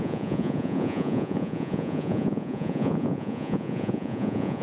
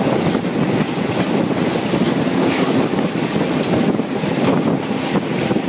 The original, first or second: second